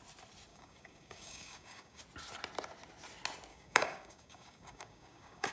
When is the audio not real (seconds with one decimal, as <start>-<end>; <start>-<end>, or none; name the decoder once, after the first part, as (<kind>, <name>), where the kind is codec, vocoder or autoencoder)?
0.5-2.0 (codec, DAC); 3.5-5.5